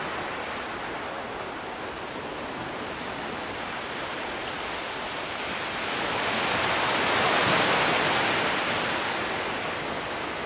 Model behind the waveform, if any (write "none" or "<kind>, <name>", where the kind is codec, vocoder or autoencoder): none